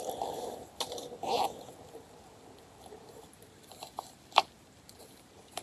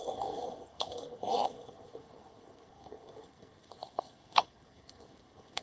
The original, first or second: first